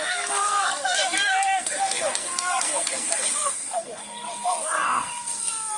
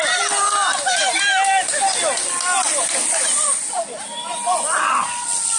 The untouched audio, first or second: second